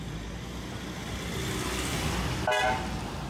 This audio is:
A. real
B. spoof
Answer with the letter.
A